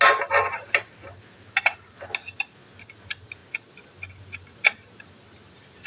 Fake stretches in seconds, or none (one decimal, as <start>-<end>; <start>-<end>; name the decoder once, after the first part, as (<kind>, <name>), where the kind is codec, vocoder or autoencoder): none